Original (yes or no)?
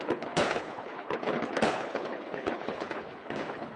no